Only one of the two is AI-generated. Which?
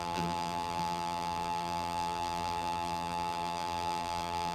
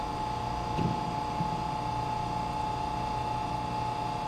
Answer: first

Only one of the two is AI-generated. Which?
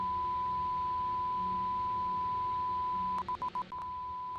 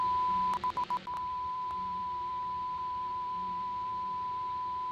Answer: second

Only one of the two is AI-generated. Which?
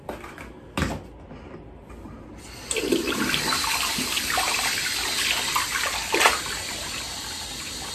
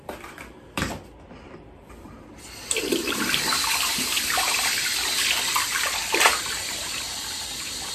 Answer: second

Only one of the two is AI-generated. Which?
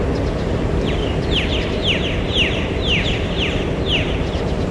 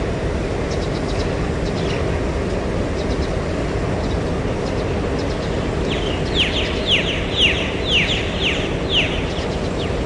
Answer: first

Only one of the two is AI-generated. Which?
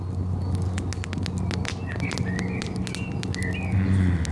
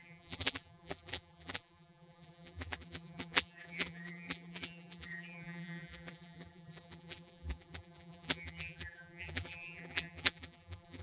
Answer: second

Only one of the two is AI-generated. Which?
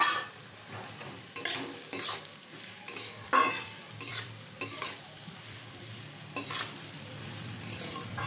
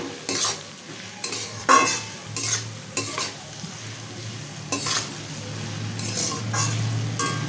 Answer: first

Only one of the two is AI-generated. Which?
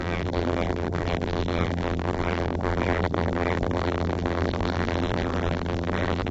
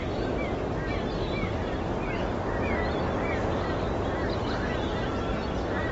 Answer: first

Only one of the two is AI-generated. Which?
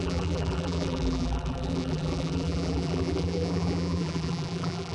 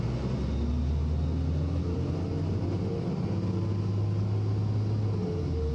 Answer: first